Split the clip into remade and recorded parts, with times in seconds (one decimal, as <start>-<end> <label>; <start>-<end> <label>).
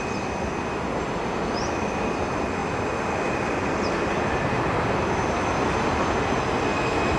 0.0-7.2 recorded